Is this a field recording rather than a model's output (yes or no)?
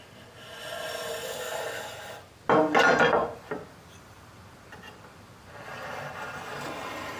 yes